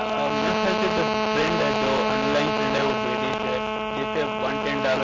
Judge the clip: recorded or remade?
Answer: recorded